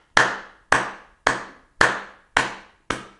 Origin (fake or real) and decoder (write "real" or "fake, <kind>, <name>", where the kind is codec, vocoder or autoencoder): real